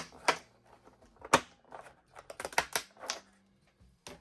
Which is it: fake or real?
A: real